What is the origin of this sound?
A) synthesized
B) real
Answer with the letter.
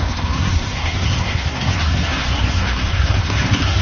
A